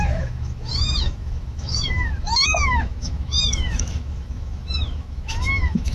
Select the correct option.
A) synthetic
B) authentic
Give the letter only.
A